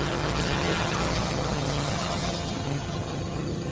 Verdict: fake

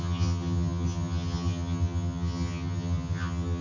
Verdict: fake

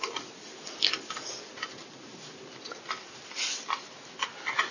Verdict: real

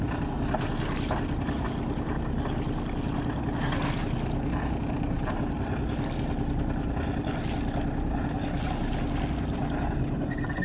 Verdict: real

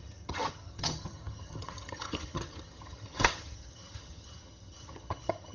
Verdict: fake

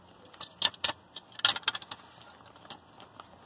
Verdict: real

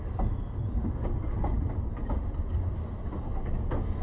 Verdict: real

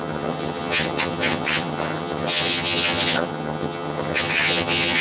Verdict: fake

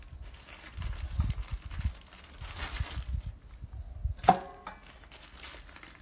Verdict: real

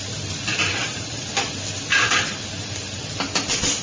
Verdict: real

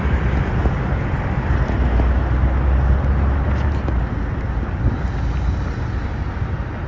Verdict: real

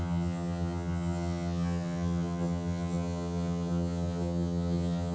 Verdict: fake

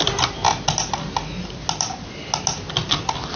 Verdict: real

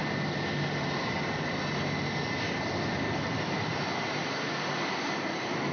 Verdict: real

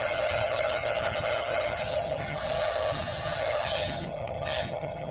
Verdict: fake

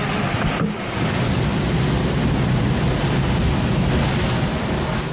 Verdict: real